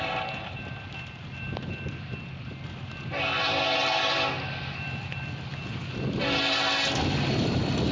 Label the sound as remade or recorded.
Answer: recorded